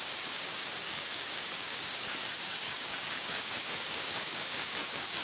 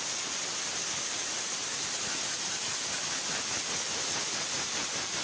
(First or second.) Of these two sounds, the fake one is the first